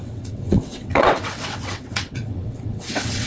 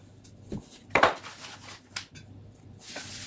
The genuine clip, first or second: second